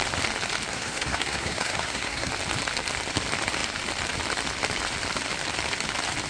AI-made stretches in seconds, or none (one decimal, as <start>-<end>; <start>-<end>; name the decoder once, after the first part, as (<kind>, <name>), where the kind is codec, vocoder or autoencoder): 0.7-2.3 (codec, SNAC)